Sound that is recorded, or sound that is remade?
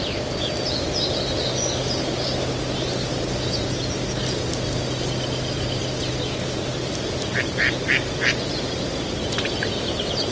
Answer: recorded